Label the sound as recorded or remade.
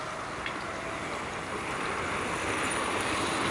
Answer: remade